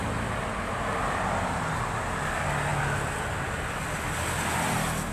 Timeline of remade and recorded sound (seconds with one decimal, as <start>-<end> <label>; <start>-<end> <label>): 0.0-5.1 recorded